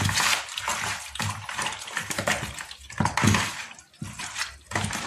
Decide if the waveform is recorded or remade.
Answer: recorded